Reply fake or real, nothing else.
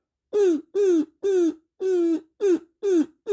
real